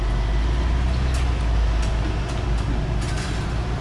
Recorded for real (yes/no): yes